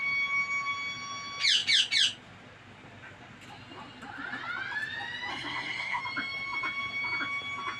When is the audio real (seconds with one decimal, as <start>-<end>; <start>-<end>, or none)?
0.0-5.3; 6.0-7.8